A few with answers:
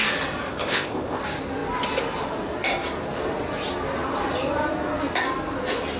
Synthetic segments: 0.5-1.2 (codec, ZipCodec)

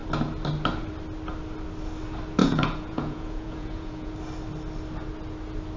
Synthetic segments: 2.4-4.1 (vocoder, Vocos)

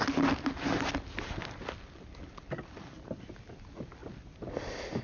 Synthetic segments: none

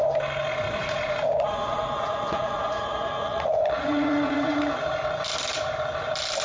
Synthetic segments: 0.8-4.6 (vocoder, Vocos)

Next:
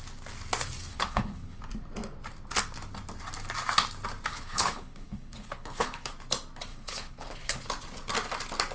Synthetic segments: 0.9-1.6 (codec, HILCodec); 4.3-6.1; 6.7-7.6

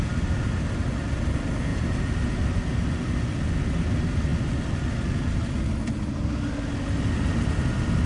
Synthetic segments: none